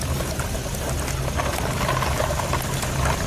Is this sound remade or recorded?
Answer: recorded